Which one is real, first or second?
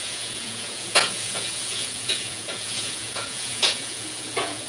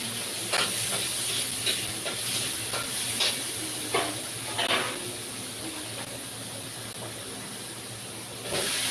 second